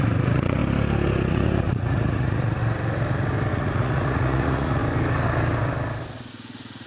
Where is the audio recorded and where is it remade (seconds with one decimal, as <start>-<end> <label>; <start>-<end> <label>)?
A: 0.0-0.6 remade; 0.6-1.3 recorded; 1.3-2.6 remade; 2.6-3.5 recorded; 3.5-4.8 remade; 4.8-6.3 recorded; 6.3-6.9 remade